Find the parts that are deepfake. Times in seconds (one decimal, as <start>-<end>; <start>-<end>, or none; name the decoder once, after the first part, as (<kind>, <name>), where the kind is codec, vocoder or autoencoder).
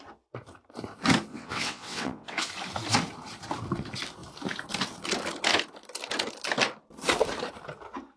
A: 1.3-2.5 (vocoder, WaveNeXt)